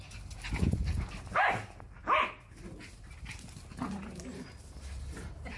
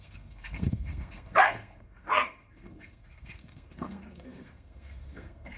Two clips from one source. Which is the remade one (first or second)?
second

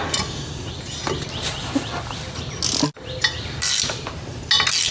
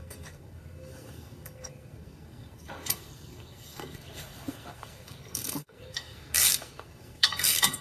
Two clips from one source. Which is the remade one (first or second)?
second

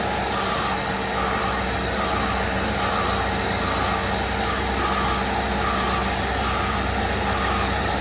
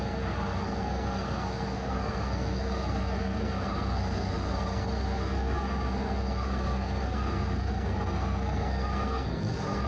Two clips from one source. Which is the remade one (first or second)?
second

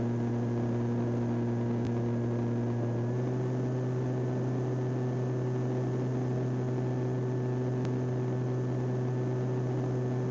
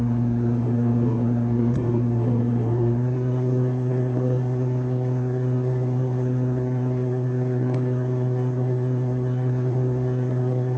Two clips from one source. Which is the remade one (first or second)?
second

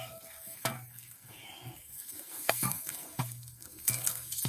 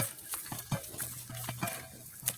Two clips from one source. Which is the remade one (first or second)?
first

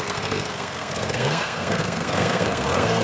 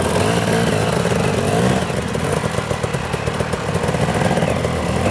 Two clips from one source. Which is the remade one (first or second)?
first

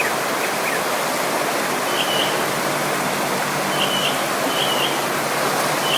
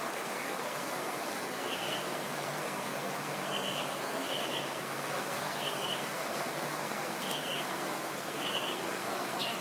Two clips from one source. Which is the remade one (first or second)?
second